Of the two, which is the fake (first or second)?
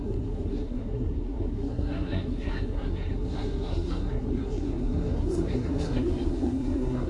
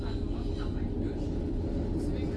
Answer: first